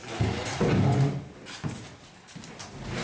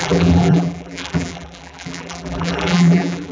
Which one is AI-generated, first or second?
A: second